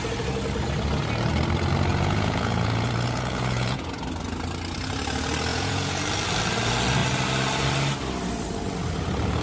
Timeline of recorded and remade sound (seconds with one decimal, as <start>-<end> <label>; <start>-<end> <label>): 0.0-1.9 recorded; 1.9-3.9 remade; 3.9-5.5 recorded; 5.5-6.0 remade; 6.0-9.4 recorded